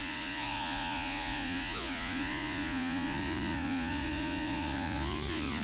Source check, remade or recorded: remade